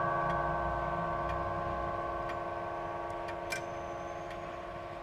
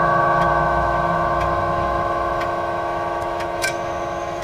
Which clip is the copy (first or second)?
second